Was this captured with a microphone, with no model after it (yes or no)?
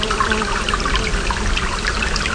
yes